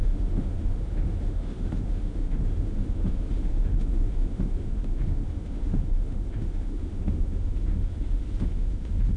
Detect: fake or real fake